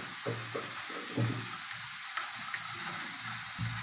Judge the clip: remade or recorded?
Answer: recorded